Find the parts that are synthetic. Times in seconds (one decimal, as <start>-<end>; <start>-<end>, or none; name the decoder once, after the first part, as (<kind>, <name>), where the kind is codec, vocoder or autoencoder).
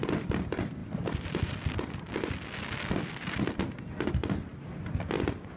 none